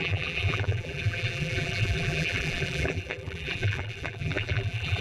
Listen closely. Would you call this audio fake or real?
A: fake